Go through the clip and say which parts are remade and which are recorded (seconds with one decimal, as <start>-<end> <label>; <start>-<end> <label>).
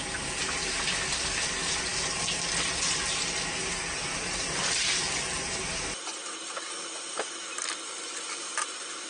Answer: 0.0-9.1 recorded